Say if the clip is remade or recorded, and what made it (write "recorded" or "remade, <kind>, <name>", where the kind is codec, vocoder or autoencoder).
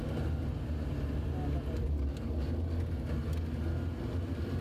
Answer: recorded